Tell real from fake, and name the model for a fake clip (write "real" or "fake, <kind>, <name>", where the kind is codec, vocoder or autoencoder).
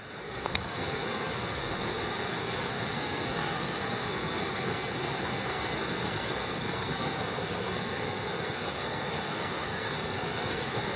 fake, codec, SNAC